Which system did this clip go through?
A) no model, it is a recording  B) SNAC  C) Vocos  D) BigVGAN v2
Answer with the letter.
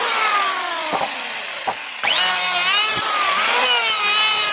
A